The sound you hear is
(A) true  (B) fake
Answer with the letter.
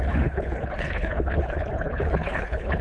B